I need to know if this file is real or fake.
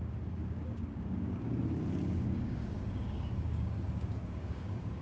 fake